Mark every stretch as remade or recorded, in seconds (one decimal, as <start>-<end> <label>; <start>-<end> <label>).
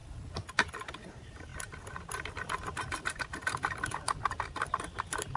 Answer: 0.0-5.4 recorded